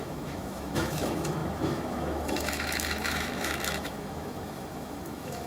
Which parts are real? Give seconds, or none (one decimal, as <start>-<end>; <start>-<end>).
none